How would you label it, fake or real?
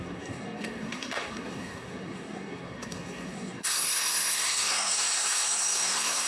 fake